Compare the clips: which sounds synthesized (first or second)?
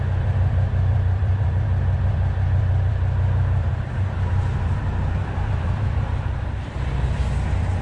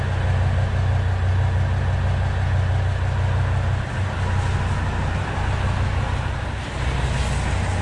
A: first